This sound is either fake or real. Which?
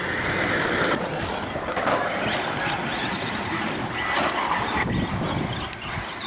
real